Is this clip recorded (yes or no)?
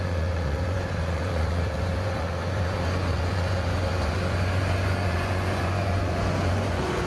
no